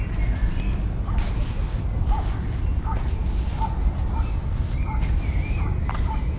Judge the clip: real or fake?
real